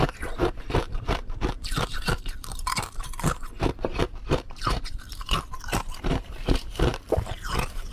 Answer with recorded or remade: remade